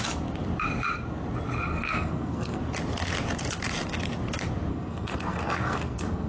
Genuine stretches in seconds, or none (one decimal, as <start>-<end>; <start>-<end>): 0.0-1.7; 2.6-4.7

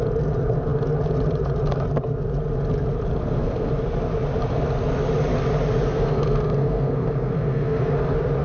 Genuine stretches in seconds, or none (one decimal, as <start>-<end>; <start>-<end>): 0.0-3.2; 3.7-5.8; 7.8-8.4

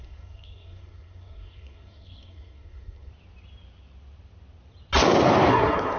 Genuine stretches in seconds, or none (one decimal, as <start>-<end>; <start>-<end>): 3.1-5.5